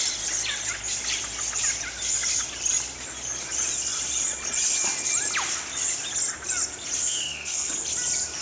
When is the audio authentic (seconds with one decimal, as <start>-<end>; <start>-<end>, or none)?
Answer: 0.0-7.0; 7.7-8.4